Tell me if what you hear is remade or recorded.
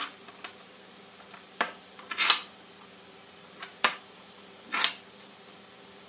remade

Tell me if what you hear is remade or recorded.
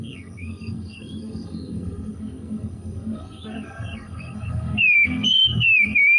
remade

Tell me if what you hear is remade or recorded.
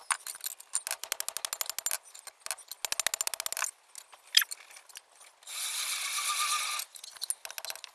recorded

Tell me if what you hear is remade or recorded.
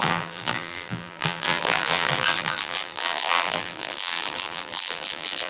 remade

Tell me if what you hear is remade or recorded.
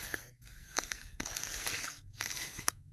remade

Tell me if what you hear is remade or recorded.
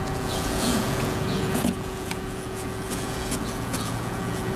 remade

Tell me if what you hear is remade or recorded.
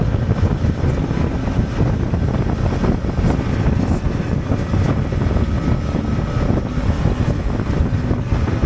recorded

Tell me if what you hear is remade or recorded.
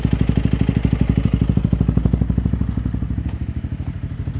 recorded